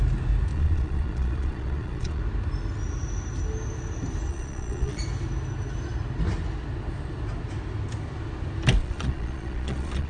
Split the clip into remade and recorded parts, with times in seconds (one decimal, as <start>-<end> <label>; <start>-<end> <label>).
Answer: 0.0-0.5 recorded; 0.5-2.2 remade; 2.2-4.3 recorded; 4.3-5.0 remade; 5.0-8.8 recorded; 8.8-10.1 remade